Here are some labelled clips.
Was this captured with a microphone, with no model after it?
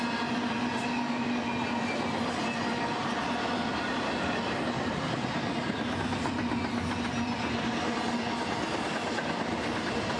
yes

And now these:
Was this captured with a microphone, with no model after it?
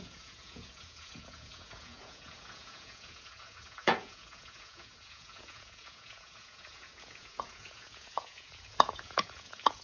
no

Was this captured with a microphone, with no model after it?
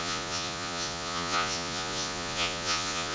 no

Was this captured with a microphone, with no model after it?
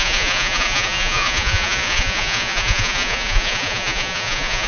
no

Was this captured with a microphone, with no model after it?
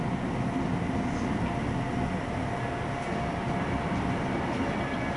yes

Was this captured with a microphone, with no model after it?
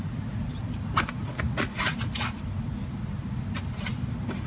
yes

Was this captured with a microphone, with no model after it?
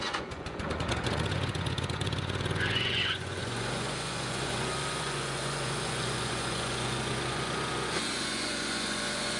no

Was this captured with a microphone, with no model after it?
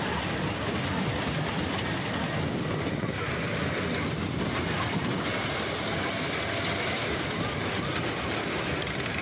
yes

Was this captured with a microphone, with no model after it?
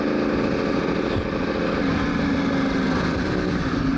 yes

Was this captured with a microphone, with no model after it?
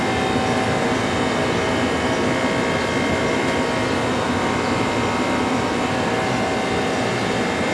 yes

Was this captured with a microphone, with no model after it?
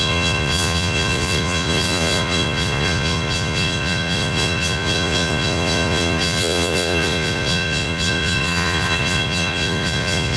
no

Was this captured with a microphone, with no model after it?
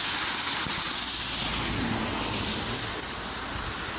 yes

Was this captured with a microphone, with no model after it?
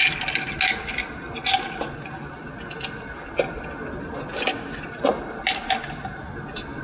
yes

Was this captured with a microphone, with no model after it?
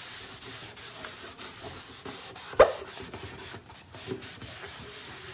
yes